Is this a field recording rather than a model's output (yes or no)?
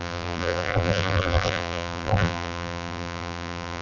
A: no